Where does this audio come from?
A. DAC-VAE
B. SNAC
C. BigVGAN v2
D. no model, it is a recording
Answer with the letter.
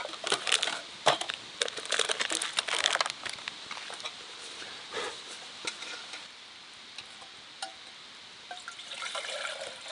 C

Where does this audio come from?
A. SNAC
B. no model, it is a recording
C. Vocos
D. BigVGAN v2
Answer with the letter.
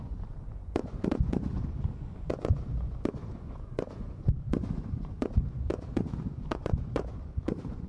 C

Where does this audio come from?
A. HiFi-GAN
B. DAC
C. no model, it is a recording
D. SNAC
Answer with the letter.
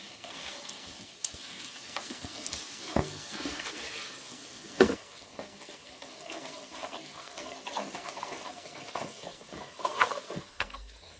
D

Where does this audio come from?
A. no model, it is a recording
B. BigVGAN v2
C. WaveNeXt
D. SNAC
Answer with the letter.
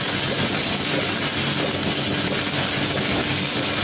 A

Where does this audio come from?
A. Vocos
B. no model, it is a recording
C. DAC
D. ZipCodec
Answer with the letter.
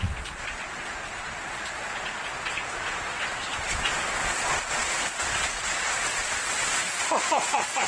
A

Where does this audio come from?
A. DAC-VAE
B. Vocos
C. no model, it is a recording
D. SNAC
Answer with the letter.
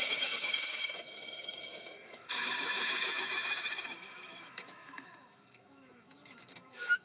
A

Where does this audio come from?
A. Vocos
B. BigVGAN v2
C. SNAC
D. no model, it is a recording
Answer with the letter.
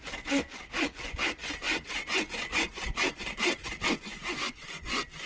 A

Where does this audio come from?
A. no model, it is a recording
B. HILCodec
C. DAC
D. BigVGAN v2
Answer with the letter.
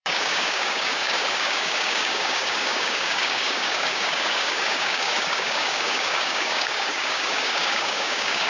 C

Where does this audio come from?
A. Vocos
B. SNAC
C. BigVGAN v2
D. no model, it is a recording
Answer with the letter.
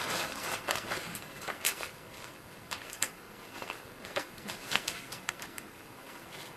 B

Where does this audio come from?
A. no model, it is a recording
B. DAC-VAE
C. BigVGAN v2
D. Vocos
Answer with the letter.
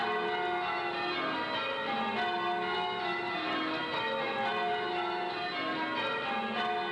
A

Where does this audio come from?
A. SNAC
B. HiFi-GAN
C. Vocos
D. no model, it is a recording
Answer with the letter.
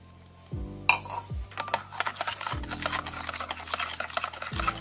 D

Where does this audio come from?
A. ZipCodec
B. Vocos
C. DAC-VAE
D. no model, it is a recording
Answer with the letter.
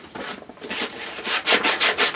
D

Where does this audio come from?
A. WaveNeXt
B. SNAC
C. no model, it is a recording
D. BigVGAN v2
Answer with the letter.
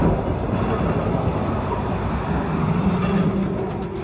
C